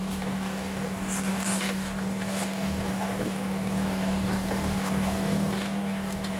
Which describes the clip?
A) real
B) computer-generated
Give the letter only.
B